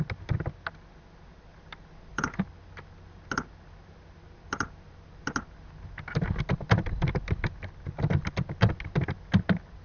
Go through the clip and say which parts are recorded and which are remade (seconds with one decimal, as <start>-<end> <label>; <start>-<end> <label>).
0.0-9.8 recorded